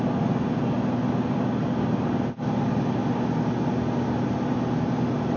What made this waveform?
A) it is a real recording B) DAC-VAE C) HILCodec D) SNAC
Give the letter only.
A